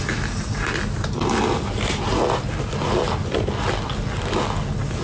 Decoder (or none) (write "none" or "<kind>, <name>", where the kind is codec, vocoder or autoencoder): none